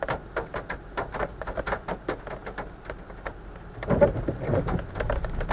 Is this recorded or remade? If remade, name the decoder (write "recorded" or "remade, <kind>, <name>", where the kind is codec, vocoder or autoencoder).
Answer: recorded